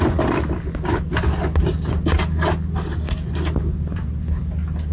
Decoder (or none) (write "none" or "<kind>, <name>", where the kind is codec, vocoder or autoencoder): none